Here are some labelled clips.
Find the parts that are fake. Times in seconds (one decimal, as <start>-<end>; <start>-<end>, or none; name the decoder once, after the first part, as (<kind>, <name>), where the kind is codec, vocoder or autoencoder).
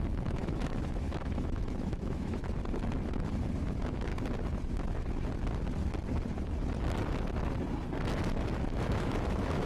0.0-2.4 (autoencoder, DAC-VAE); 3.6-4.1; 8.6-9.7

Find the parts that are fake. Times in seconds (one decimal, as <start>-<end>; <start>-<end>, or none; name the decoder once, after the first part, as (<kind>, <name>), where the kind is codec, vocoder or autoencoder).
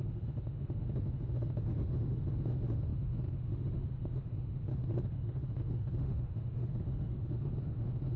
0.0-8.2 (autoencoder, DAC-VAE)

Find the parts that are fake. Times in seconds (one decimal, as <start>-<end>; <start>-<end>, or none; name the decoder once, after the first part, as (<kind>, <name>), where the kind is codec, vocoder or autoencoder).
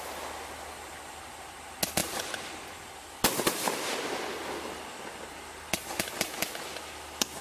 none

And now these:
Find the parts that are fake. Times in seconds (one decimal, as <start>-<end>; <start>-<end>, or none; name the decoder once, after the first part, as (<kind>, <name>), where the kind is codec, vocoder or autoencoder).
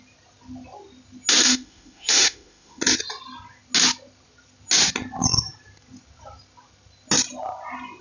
1.4-2.8 (autoencoder, DAC-VAE)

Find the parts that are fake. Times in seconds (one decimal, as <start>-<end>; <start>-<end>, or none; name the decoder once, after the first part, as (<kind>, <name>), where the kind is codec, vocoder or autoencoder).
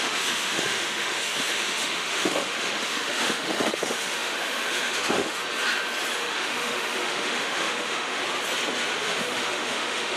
0.0-5.4 (autoencoder, DAC-VAE); 6.2-8.2; 9.0-10.2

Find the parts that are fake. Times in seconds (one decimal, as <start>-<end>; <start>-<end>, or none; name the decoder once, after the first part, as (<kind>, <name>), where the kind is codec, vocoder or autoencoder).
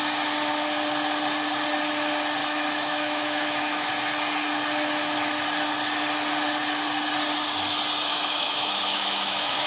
2.4-3.9 (autoencoder, DAC-VAE); 8.1-9.7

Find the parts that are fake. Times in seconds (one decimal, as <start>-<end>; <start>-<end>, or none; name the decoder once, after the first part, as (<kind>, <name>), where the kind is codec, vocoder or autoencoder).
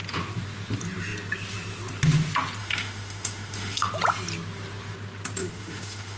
2.6-3.9 (autoencoder, DAC-VAE); 5.4-6.2